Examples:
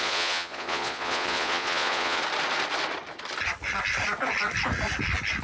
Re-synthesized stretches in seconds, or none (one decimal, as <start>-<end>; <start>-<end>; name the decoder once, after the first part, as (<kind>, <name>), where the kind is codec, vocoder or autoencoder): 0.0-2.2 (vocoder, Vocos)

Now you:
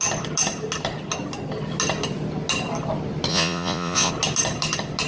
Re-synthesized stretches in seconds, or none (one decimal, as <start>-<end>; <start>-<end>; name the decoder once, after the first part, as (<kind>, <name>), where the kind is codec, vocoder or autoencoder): 3.3-4.1 (vocoder, Vocos)

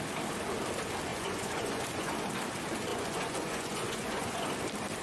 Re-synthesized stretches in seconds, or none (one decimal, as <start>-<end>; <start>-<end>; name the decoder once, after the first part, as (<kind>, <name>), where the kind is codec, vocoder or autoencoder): 1.1-2.1 (vocoder, Vocos); 2.9-4.5